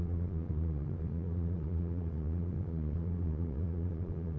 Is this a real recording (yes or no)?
no